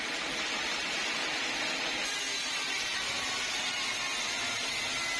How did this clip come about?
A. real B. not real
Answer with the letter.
A